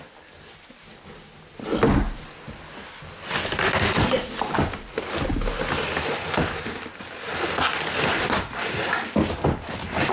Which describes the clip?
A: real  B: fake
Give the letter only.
A